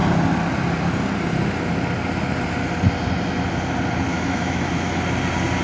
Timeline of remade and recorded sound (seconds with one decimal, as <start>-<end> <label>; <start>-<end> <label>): 0.0-4.1 recorded; 4.1-5.0 remade; 5.0-5.6 recorded